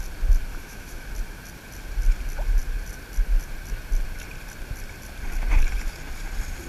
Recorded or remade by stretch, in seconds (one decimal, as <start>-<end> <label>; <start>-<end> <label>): 0.0-0.5 recorded; 0.5-1.1 remade; 1.1-6.7 recorded